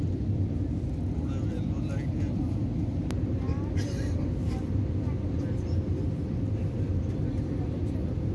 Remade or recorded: recorded